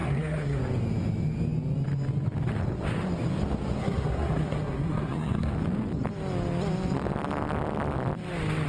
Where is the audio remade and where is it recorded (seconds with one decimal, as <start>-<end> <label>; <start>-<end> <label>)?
0.0-0.6 remade; 0.6-3.8 recorded; 3.8-5.5 remade; 5.5-8.7 recorded